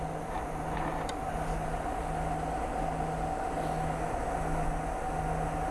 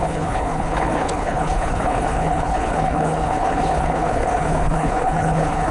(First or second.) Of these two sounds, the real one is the first